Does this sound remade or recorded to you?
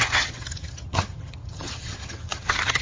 remade